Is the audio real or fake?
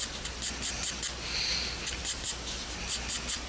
real